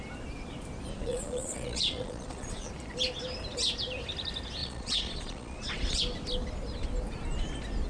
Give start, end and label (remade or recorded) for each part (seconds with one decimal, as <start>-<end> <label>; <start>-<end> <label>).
0.0-0.9 recorded; 0.9-2.7 remade; 2.7-4.6 recorded; 4.6-6.0 remade; 6.0-7.9 recorded